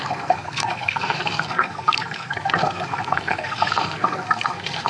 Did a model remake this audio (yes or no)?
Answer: yes